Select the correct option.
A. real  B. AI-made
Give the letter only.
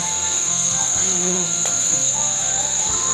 B